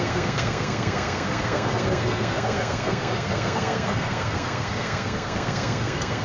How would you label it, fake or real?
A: fake